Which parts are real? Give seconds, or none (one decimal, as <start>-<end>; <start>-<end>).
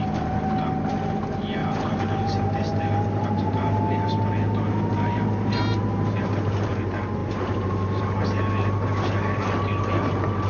0.0-1.6; 3.8-4.9; 6.7-7.2; 8.0-10.5